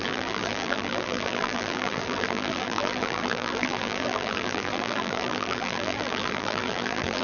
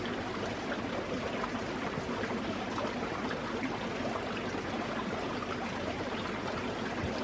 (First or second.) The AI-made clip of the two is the first